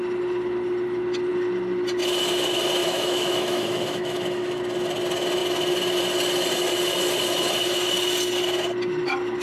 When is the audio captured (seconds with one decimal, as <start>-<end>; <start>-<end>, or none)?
0.0-2.8; 4.6-9.4